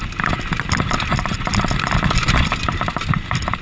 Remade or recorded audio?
recorded